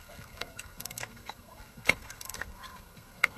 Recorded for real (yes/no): no